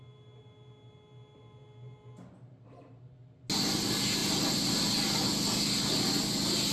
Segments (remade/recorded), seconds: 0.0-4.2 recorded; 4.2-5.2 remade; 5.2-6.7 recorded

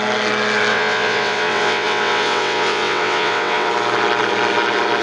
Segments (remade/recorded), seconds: 0.0-0.7 recorded; 0.7-3.7 remade; 3.7-5.0 recorded

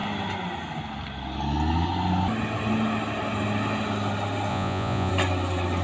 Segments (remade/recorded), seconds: 0.0-4.5 recorded; 4.5-5.1 remade; 5.1-5.8 recorded

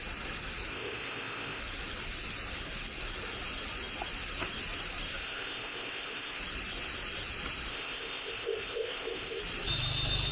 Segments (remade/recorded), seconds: 0.0-0.7 recorded; 0.7-1.6 remade; 1.6-5.2 recorded; 5.2-6.4 remade; 6.4-7.7 recorded; 7.7-9.4 remade; 9.4-10.3 recorded

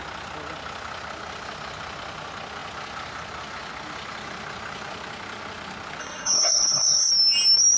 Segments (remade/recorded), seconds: 0.0-6.0 recorded; 6.0-7.1 remade; 7.1-7.8 recorded

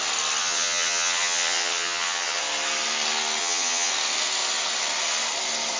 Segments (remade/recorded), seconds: 0.0-0.4 recorded; 0.4-2.4 remade; 2.4-3.4 recorded; 3.4-3.9 remade; 3.9-5.8 recorded

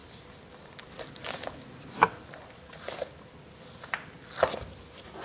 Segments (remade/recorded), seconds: 0.0-5.2 remade